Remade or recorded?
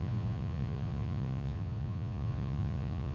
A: remade